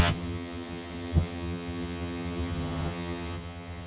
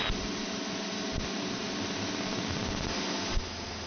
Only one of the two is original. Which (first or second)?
second